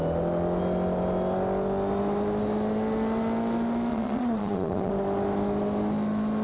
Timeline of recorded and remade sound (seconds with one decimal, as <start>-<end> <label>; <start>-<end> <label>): 0.0-3.9 recorded; 3.9-4.9 remade; 4.9-6.4 recorded